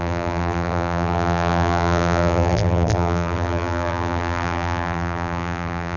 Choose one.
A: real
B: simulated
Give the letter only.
B